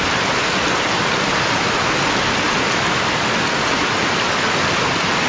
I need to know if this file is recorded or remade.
recorded